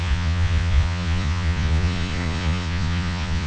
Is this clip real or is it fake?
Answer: fake